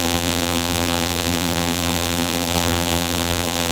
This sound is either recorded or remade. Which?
remade